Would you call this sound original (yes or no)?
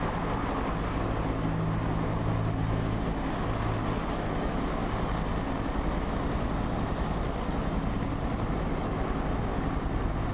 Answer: yes